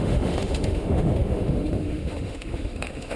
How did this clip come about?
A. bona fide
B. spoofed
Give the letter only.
B